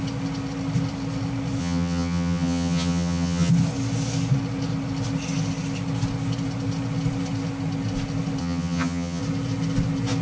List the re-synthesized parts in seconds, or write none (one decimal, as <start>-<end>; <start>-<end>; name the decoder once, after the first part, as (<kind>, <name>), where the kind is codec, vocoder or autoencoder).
1.6-3.5 (vocoder, HiFi-GAN); 8.4-9.2